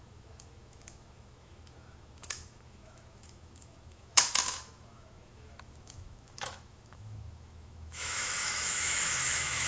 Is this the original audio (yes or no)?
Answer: no